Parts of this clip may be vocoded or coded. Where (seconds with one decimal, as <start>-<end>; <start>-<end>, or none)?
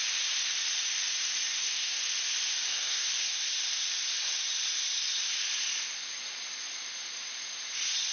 1.5-2.0; 2.7-3.4